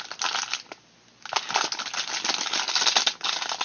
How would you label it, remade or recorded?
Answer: recorded